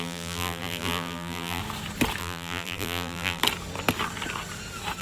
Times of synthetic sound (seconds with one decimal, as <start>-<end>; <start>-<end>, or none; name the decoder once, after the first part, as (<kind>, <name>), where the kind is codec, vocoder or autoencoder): 0.0-1.6 (vocoder, BigVGAN v2); 2.2-3.4